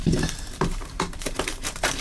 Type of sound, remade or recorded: remade